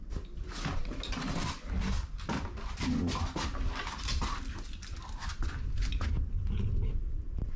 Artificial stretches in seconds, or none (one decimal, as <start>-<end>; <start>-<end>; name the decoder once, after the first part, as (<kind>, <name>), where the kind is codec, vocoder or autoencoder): none